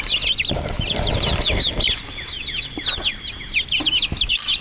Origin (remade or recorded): recorded